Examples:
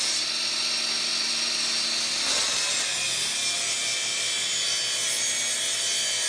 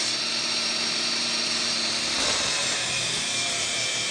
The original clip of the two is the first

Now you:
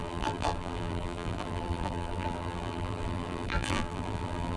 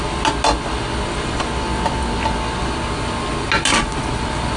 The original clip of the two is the second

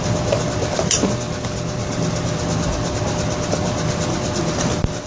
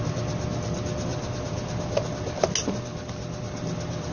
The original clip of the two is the second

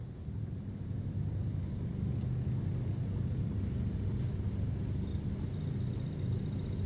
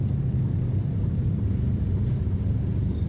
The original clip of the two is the first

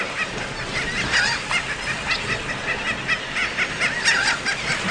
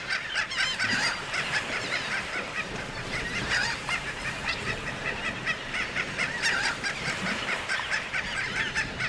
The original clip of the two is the first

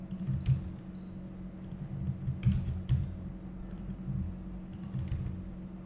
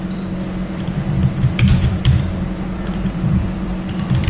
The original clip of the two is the first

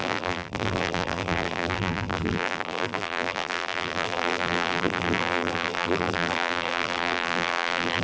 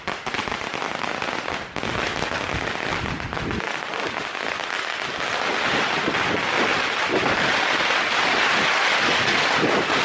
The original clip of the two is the second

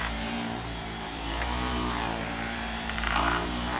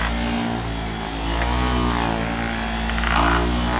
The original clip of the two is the second